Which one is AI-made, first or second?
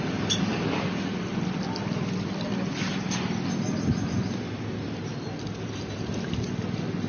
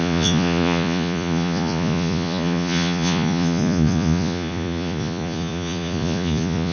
second